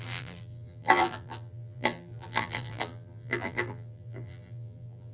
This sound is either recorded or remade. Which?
remade